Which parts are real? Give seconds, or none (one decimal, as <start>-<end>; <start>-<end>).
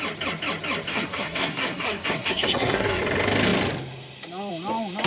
0.0-0.9; 3.0-5.1